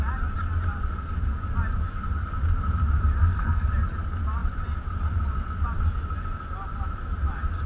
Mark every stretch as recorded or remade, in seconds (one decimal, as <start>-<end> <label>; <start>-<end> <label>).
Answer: 0.0-3.2 recorded; 3.2-3.7 remade; 3.7-7.7 recorded